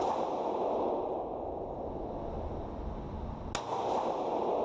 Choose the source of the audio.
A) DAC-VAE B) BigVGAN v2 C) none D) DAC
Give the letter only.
C